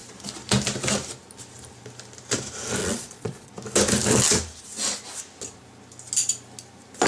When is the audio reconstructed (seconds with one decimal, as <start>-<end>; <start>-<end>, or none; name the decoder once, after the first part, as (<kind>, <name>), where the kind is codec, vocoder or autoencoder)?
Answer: 2.8-3.5 (vocoder, Vocos)